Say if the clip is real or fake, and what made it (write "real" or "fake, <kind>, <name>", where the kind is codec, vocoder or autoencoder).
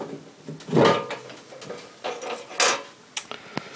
real